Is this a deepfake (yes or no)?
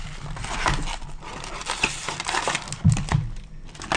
no